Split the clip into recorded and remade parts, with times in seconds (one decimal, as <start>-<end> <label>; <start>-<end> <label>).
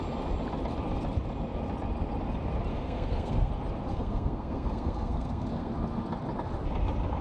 0.0-2.7 recorded; 2.7-3.5 remade; 3.5-3.9 recorded; 3.9-5.7 remade; 5.7-7.2 recorded